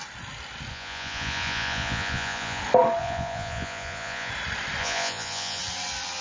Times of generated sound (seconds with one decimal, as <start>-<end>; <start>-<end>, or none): 0.7-2.6; 3.0-4.3; 4.8-5.6